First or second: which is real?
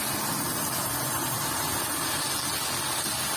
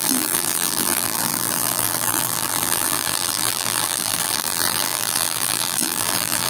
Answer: first